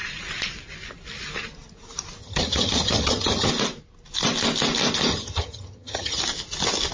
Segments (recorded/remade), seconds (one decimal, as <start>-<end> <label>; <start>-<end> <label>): 0.0-2.2 recorded; 2.2-3.5 remade; 3.5-5.1 recorded; 5.1-6.2 remade; 6.2-6.9 recorded